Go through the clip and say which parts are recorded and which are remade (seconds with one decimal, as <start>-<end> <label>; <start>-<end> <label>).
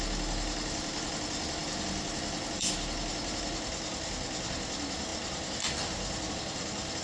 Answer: 0.0-7.0 recorded